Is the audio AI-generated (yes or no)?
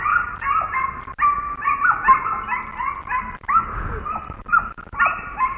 no